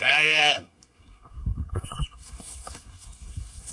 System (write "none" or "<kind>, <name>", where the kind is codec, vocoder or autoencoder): codec, SNAC